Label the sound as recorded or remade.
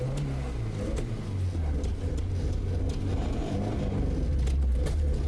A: recorded